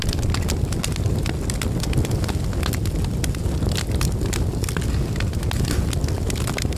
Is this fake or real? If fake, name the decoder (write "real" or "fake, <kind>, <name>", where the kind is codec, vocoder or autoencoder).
real